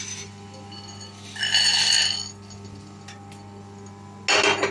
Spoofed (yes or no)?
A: no